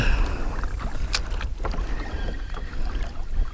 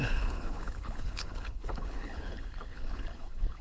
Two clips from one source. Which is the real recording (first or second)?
first